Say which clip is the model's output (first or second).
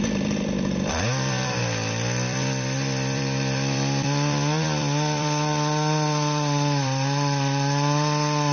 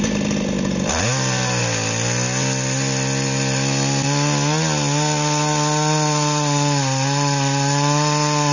first